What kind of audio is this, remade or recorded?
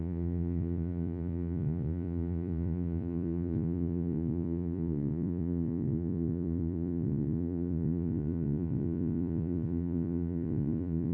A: remade